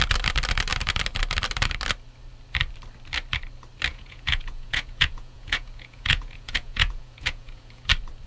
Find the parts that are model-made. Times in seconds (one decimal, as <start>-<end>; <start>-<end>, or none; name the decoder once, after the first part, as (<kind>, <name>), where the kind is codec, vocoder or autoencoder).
3.9-7.9 (vocoder, Vocos)